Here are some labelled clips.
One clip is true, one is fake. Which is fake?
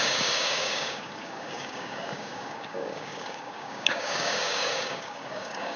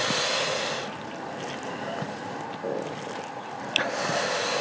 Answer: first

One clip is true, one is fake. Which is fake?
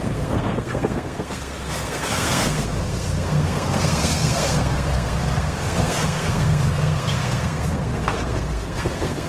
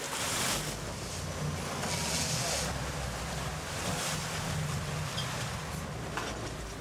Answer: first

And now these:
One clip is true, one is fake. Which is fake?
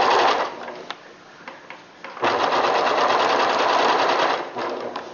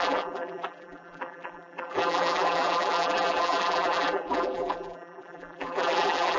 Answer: second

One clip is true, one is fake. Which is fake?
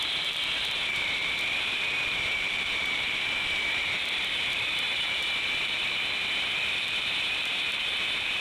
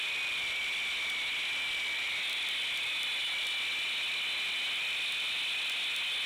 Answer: first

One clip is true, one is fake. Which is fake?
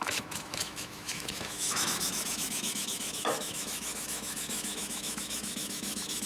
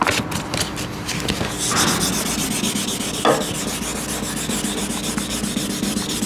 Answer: first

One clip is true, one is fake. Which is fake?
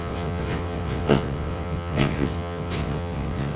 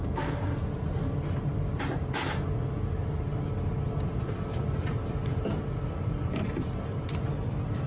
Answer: first